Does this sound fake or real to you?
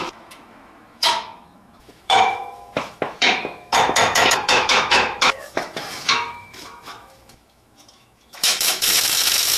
fake